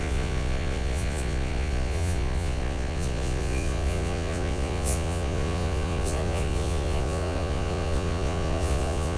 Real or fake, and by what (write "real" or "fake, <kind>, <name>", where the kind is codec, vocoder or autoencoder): fake, vocoder, Vocos